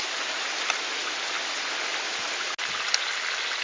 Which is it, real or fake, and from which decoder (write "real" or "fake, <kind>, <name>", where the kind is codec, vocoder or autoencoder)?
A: real